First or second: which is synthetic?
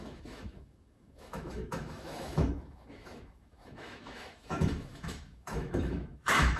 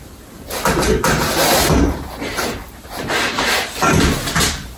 first